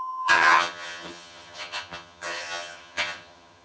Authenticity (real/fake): fake